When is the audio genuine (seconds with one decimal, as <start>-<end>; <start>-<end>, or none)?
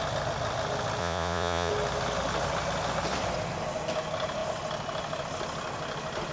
0.0-1.0; 1.7-6.3